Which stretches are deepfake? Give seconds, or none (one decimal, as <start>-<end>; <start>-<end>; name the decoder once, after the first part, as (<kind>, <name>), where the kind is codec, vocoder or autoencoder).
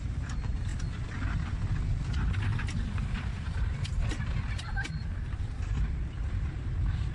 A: 0.0-7.1 (vocoder, BigVGAN v2)